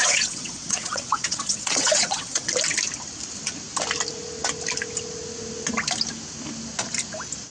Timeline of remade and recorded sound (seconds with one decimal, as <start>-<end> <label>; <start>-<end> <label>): 0.0-2.5 remade; 2.5-7.5 recorded